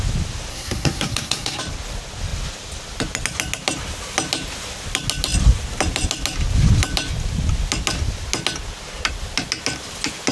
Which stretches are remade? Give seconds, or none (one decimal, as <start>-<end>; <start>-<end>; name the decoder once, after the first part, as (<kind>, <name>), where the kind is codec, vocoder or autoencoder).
0.5-1.6 (codec, SNAC)